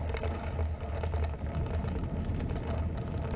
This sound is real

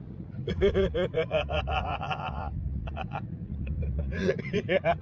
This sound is fake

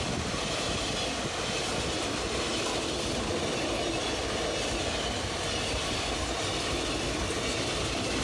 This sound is real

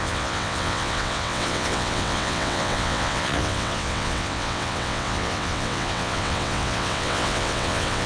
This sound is fake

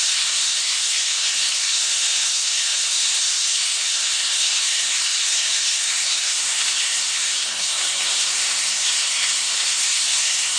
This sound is fake